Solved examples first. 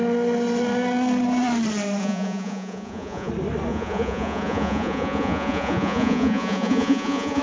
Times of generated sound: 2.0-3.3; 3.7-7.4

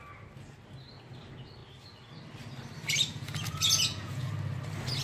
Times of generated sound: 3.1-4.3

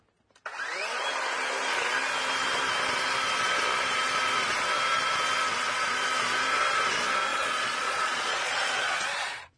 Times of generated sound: 7.3-9.0

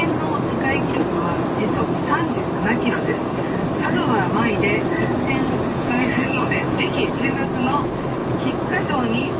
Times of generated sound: 5.7-7.1; 8.2-8.9

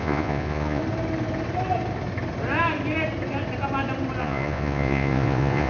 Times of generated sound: 0.0-0.8; 4.2-5.7

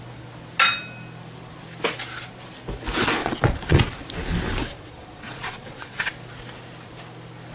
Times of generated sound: 3.2-3.8; 4.6-6.1

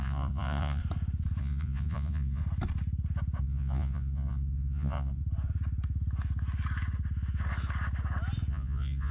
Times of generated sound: 0.0-0.8; 1.4-2.4; 3.4-5.2; 8.5-9.1

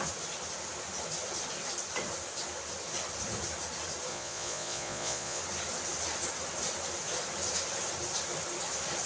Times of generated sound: 4.1-5.4